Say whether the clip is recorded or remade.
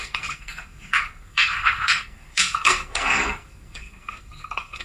remade